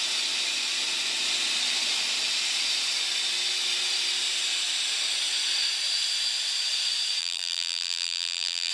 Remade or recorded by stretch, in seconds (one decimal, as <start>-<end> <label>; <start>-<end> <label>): 0.0-7.2 recorded; 7.2-8.7 remade